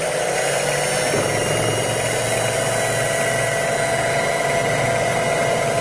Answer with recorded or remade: recorded